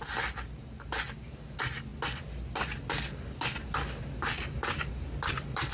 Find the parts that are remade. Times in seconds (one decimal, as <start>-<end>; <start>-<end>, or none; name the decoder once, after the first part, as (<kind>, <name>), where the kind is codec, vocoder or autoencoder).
none

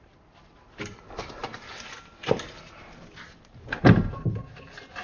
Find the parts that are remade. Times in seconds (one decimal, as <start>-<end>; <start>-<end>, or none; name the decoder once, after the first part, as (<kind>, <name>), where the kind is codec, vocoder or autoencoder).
none

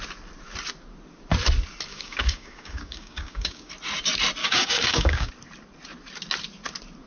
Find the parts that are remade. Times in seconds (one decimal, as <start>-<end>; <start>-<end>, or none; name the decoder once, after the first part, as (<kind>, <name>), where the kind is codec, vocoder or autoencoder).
1.9-3.7 (codec, DAC); 4.4-5.3

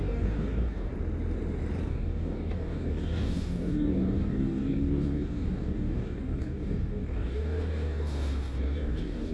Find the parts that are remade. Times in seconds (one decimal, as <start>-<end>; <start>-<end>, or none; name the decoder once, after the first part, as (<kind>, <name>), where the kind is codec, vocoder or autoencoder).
0.0-0.9 (codec, DAC); 1.9-9.3

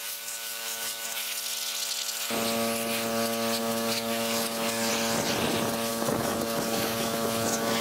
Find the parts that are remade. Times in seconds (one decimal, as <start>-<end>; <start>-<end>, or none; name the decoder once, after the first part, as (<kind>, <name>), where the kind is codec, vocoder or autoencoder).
0.0-1.2 (codec, DAC); 3.6-4.9; 5.9-7.8

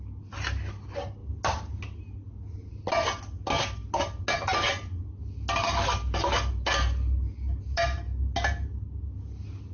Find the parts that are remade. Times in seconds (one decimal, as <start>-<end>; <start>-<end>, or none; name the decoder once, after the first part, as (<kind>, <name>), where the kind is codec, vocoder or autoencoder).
none

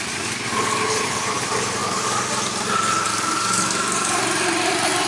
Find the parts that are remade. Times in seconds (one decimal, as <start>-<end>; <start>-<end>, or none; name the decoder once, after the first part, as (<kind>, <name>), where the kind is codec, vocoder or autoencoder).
0.5-1.0 (codec, DAC); 1.8-2.3; 3.1-4.2